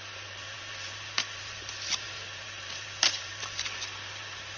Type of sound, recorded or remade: remade